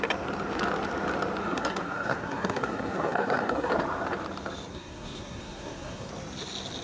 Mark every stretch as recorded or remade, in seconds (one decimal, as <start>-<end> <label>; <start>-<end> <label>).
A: 0.0-1.4 recorded; 1.4-3.7 remade; 3.7-4.7 recorded; 4.7-6.1 remade; 6.1-6.8 recorded